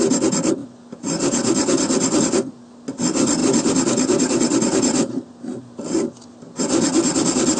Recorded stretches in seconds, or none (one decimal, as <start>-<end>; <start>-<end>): 0.0-7.6